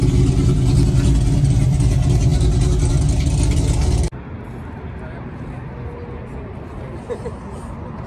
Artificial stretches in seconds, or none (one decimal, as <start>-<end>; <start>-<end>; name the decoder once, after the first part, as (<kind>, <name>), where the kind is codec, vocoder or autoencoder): none